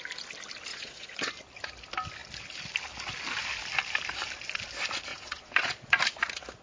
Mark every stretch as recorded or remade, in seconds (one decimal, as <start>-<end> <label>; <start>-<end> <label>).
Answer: 0.0-0.7 recorded; 0.7-1.3 remade; 1.3-5.1 recorded; 5.1-6.0 remade; 6.0-6.6 recorded